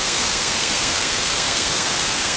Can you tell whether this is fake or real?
fake